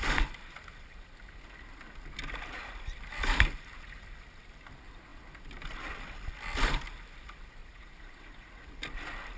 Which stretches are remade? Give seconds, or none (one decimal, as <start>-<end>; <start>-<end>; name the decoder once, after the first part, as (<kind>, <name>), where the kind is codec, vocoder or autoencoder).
7.6-8.6 (vocoder, Vocos)